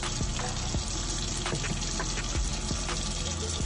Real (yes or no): yes